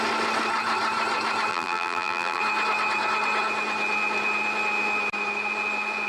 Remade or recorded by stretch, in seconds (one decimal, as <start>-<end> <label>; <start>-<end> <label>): 0.0-1.5 recorded; 1.5-2.4 remade; 2.4-6.1 recorded

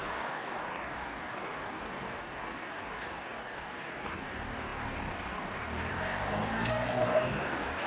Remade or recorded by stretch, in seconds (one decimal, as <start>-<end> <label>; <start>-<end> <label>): 0.0-7.9 remade

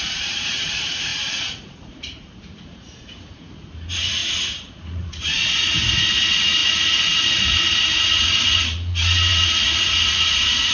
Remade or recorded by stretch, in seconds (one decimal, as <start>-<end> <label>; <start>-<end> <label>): 0.0-10.7 remade

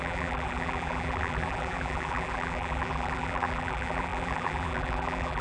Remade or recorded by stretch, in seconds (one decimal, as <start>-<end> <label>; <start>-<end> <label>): 0.0-5.4 remade

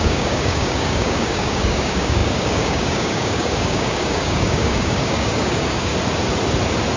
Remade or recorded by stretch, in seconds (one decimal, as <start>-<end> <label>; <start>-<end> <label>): 0.0-5.9 remade; 5.9-7.0 recorded

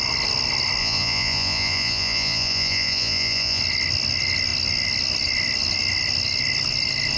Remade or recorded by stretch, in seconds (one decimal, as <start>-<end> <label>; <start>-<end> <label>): 0.0-0.8 recorded; 0.8-3.6 remade; 3.6-7.2 recorded

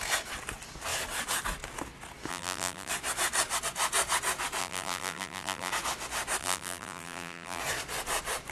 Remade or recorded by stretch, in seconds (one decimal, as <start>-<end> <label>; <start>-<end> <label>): 0.0-2.3 recorded; 2.3-2.9 remade; 2.9-4.6 recorded; 4.6-5.7 remade; 5.7-6.4 recorded; 6.4-7.6 remade; 7.6-8.5 recorded

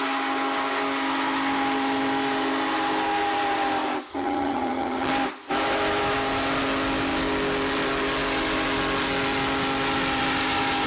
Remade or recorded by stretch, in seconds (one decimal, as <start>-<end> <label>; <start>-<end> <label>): 0.0-4.1 recorded; 4.1-5.1 remade; 5.1-10.9 recorded